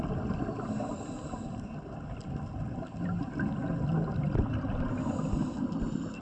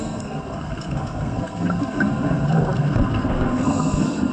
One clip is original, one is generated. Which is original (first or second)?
first